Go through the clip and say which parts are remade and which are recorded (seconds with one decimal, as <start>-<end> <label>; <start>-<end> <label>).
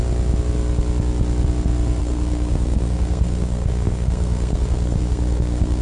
0.0-2.0 recorded; 2.0-5.8 remade